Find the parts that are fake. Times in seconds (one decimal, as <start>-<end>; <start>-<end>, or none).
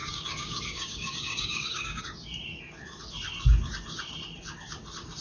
0.0-2.0